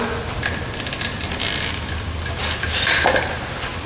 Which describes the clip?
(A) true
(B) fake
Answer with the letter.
A